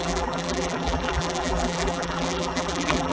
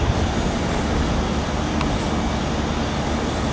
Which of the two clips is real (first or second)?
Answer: second